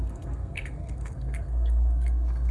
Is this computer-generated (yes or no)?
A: yes